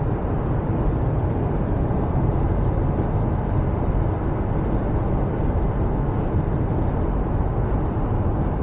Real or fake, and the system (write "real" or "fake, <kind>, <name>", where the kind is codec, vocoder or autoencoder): real